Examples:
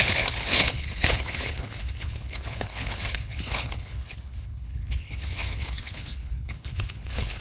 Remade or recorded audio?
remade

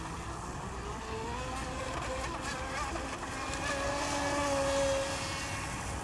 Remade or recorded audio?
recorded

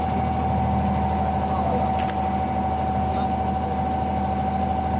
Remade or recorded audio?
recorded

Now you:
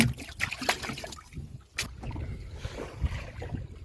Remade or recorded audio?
recorded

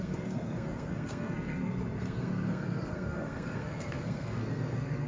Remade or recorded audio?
remade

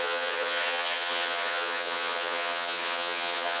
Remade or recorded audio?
remade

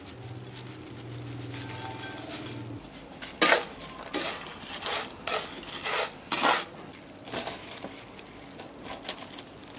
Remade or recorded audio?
recorded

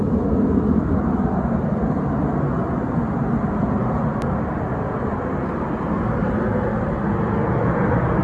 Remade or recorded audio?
recorded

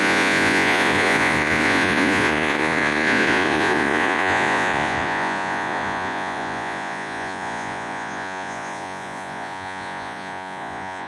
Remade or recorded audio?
remade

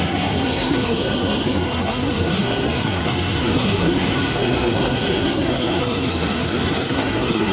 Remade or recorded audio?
remade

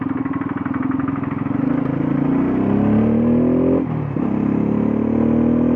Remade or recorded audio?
recorded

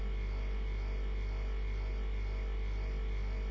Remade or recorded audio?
recorded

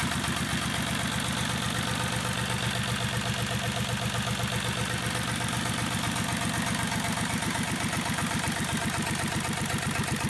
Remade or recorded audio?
recorded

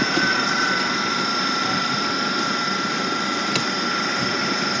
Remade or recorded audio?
remade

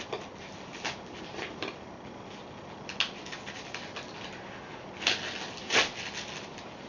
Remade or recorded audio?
recorded